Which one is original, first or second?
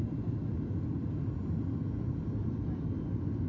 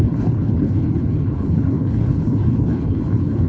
first